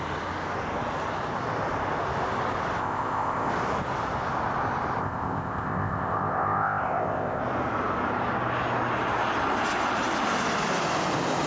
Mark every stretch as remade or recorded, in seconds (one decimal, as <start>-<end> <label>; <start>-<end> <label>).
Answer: 0.0-2.8 recorded; 2.8-3.5 remade; 3.5-5.0 recorded; 5.0-7.4 remade; 7.4-11.5 recorded

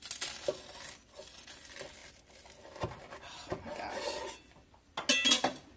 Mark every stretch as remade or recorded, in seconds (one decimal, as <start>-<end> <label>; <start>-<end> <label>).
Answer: 0.0-5.8 recorded

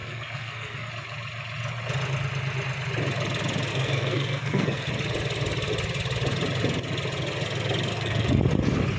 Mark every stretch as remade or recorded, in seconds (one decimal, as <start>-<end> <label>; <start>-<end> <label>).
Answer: 0.0-0.9 remade; 0.9-3.7 recorded; 3.7-4.9 remade; 4.9-7.9 recorded; 7.9-8.4 remade; 8.4-9.0 recorded

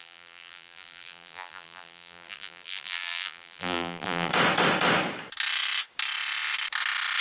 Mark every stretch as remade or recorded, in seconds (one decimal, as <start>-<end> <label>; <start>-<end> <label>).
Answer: 0.0-4.3 remade; 4.3-7.2 recorded

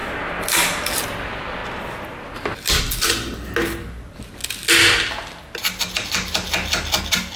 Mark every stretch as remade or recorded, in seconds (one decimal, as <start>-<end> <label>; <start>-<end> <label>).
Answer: 0.0-0.9 remade; 0.9-7.4 recorded

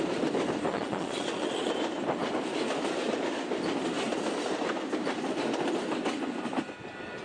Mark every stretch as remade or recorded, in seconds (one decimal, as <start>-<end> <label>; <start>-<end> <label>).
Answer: 0.0-0.7 recorded; 0.7-1.7 remade; 1.7-7.2 recorded

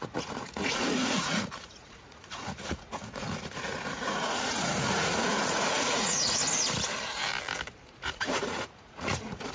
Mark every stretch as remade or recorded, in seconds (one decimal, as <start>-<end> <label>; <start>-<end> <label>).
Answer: 0.0-6.4 remade; 6.4-7.9 recorded; 7.9-9.5 remade